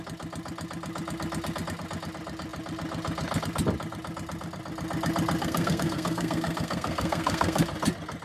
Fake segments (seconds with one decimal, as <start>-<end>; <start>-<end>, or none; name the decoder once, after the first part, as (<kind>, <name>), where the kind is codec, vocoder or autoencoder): 5.4-7.6 (codec, SNAC)